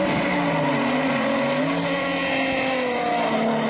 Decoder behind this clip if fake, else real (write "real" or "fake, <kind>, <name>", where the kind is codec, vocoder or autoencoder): real